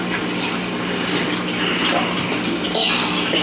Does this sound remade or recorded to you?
recorded